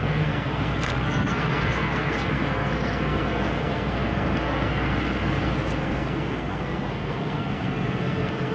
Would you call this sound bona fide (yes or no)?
no